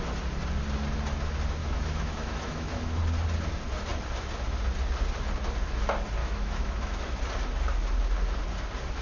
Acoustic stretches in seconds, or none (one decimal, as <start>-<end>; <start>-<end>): 0.0-1.6; 3.0-6.2; 7.2-9.0